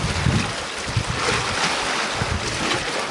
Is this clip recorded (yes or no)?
yes